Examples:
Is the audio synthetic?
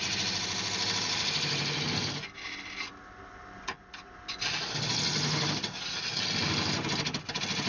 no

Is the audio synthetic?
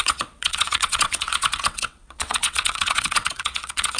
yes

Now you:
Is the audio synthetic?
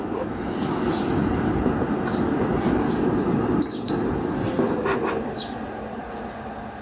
no